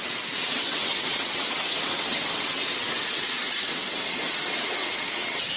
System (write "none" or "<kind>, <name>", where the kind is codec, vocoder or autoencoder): vocoder, WaveNeXt